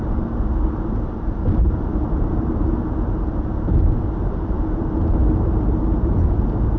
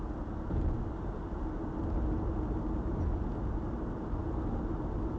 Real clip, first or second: second